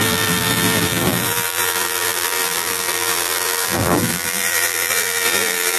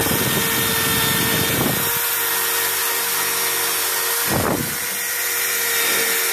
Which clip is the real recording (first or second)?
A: second